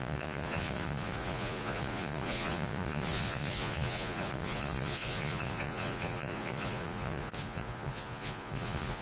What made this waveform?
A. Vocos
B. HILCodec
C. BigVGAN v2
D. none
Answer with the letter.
A